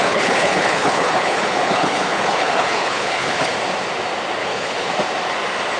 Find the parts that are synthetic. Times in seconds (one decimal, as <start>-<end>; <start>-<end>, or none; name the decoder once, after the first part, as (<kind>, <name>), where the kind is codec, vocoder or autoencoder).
0.0-3.5 (codec, HILCodec); 4.4-4.9